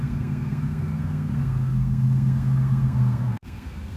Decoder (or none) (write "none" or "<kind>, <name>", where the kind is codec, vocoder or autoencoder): codec, SNAC